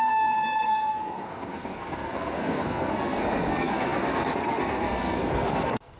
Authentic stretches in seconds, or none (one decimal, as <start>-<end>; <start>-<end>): none